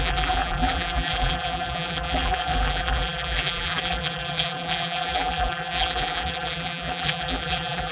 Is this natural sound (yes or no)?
no